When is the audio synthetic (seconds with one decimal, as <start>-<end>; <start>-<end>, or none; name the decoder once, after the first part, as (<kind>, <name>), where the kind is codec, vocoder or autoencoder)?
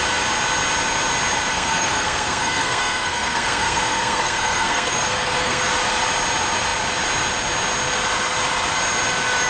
1.5-5.6 (codec, SNAC)